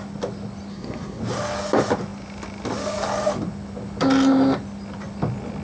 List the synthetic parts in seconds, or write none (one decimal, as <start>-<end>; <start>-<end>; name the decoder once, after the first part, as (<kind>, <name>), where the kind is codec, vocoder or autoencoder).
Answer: 0.7-1.2 (codec, SNAC)